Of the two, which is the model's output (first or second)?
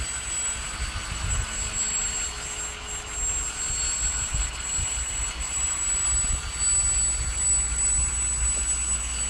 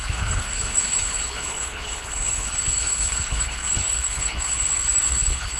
second